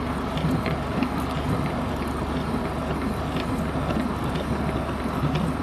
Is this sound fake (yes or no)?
no